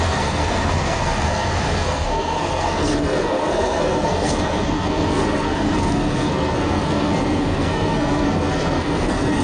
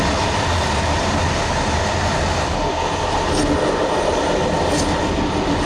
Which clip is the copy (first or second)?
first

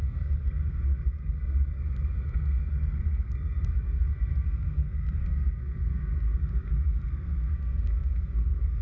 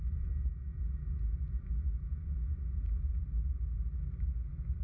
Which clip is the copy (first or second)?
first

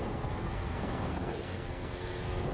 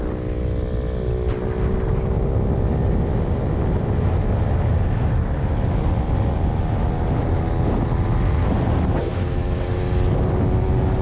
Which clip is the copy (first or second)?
first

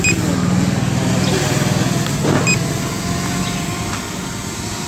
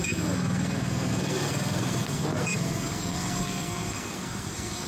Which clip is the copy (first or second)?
second